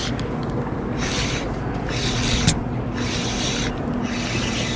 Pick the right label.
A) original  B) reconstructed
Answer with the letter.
A